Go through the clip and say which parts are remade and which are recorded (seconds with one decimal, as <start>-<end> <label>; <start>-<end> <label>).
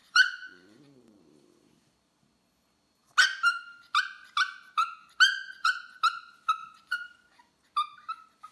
0.0-1.2 remade; 1.2-5.3 recorded; 5.3-6.0 remade; 6.0-6.6 recorded; 6.6-7.5 remade; 7.5-8.5 recorded